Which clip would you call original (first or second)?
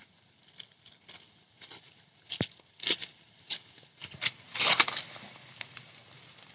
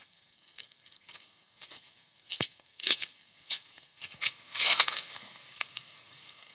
first